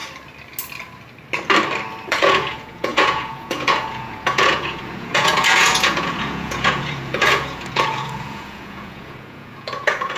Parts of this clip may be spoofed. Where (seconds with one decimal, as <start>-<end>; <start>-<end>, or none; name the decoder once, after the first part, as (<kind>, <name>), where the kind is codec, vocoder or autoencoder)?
2.1-10.2 (vocoder, Vocos)